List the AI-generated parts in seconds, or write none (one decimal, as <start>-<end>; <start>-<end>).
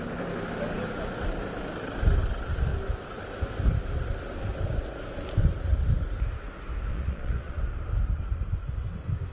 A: 6.9-7.6